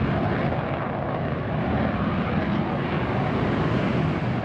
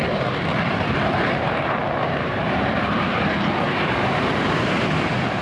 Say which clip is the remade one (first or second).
second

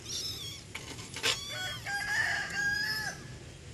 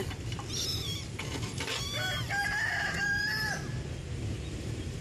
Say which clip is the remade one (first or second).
second